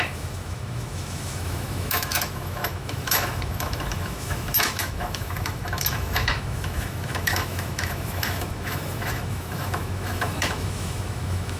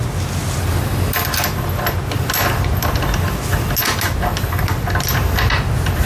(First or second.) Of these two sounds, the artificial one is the first